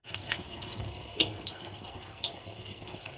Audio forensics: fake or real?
fake